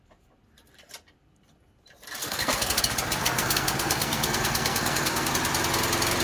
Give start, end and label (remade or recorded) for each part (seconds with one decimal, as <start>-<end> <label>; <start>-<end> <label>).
0.0-2.2 recorded; 2.2-2.8 remade; 2.8-3.2 recorded; 3.2-5.3 remade; 5.3-6.2 recorded